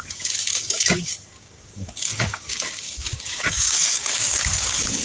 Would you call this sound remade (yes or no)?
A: yes